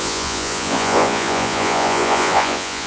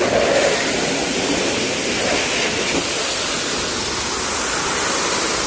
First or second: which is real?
second